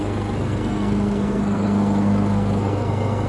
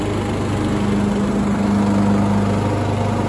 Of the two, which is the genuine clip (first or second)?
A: second